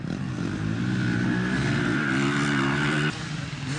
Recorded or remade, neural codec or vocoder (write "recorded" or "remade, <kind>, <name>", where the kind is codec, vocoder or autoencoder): recorded